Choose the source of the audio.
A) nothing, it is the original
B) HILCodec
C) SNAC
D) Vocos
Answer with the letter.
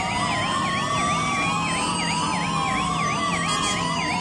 A